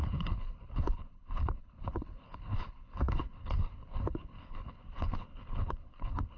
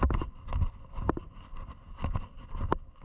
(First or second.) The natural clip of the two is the second